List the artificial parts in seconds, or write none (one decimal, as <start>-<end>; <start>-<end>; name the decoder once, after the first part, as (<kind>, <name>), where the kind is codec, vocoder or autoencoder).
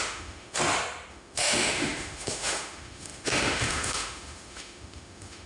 0.0-0.6 (autoencoder, DAC-VAE); 1.1-5.5